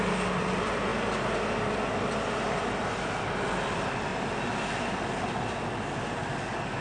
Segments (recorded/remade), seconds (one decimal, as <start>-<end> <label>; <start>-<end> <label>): 0.0-0.9 remade; 0.9-2.6 recorded; 2.6-4.1 remade; 4.1-6.8 recorded